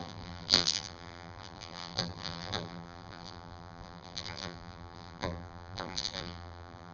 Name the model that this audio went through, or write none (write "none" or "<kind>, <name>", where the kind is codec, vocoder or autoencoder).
vocoder, BigVGAN v2